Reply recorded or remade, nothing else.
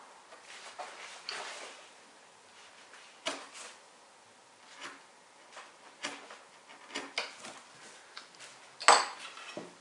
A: recorded